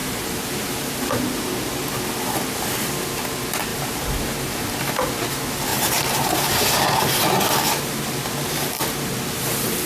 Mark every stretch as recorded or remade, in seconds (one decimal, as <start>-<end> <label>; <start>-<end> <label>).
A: 0.0-1.2 remade; 1.2-3.7 recorded; 3.7-5.2 remade; 5.2-5.7 recorded; 5.7-7.2 remade; 7.2-9.9 recorded